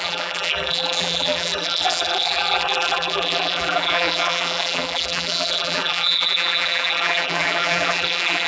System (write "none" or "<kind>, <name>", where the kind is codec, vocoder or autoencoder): vocoder, BigVGAN v2